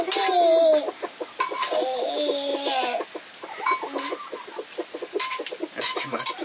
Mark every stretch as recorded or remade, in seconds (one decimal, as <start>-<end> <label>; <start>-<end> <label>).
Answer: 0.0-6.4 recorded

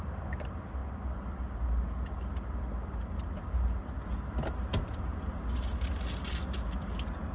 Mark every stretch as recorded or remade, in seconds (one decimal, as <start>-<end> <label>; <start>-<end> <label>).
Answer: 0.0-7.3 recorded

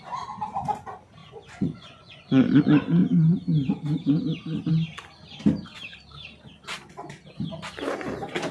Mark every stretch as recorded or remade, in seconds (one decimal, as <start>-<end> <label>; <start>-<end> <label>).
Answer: 0.0-1.2 recorded; 1.2-2.6 remade; 2.6-8.5 recorded

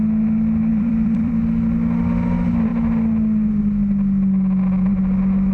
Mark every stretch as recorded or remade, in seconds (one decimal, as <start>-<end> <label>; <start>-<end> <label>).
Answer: 0.0-0.7 recorded; 0.7-1.3 remade; 1.3-5.5 recorded

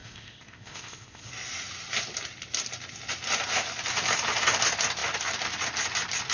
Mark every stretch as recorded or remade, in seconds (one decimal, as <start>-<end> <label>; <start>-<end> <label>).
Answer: 0.0-1.3 remade; 1.3-6.3 recorded